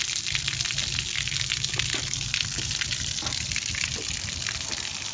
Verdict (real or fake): real